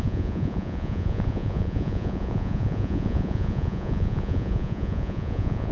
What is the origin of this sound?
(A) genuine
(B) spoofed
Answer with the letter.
B